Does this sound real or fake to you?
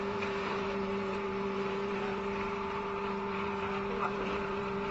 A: fake